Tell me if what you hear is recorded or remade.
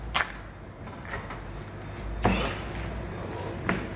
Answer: recorded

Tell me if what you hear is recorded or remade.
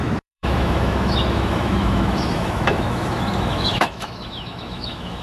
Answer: remade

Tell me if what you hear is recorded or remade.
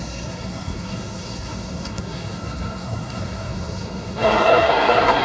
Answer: remade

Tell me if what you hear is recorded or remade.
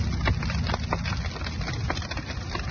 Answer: recorded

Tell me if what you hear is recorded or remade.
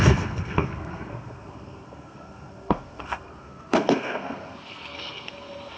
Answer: remade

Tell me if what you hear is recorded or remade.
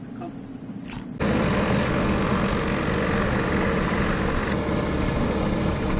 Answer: recorded